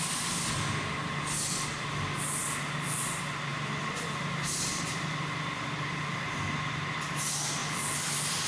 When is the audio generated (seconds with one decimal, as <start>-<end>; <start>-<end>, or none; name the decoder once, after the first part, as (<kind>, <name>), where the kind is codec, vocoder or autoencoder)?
3.5-6.0 (vocoder, BigVGAN v2); 7.6-8.5